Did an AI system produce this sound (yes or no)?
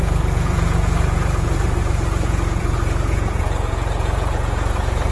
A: yes